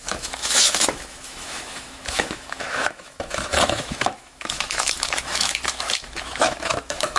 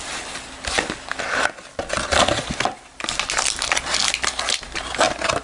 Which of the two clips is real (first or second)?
second